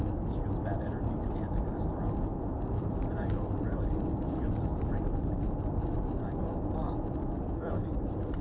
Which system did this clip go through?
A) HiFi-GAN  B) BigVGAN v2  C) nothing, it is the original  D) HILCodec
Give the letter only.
B